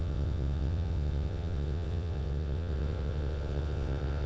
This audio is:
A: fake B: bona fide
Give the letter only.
A